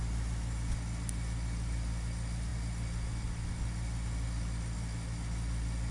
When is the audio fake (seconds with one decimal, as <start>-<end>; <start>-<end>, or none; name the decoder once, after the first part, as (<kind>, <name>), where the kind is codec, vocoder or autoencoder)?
none